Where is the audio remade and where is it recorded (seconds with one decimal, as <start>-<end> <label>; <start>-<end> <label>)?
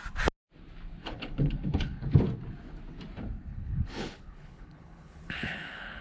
0.0-1.0 recorded; 1.0-2.2 remade; 2.2-3.5 recorded; 3.5-6.0 remade